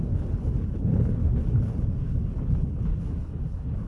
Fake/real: fake